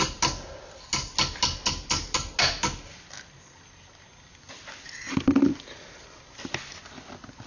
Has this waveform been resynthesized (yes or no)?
no